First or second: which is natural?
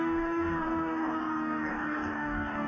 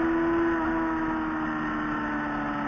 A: second